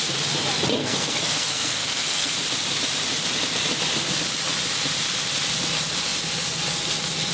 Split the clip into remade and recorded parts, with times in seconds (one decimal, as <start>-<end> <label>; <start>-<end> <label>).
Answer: 0.0-0.8 recorded; 0.8-2.3 remade; 2.3-7.3 recorded